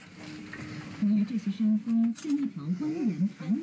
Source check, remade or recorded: recorded